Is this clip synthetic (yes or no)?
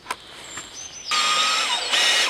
no